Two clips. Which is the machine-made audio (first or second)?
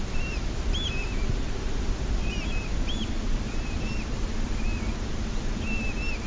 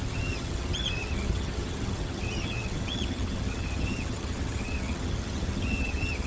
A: second